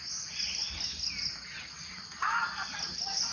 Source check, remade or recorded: recorded